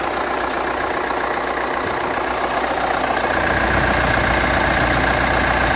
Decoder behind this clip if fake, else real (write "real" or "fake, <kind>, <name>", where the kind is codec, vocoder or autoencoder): real